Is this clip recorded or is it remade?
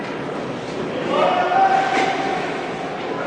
recorded